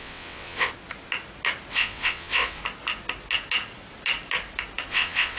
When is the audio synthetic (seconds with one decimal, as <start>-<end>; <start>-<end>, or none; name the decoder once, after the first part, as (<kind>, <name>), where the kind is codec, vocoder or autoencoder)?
0.0-0.7 (vocoder, WaveNeXt); 1.7-2.6; 4.9-5.4